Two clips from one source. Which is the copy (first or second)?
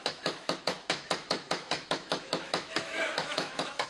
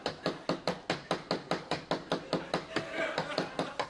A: first